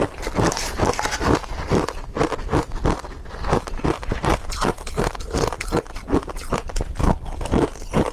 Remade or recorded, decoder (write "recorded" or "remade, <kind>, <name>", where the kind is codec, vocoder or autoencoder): recorded